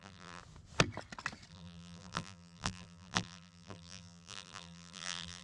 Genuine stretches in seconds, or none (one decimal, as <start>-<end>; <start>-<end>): 0.4-1.5